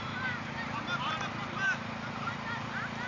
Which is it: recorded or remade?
recorded